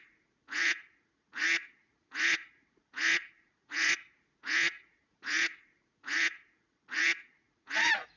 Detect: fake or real fake